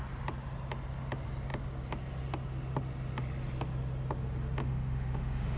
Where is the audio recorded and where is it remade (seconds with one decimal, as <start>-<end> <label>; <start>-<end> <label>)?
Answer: 0.0-4.6 recorded; 4.6-5.6 remade